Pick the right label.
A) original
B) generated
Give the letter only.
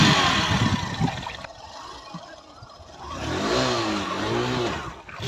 A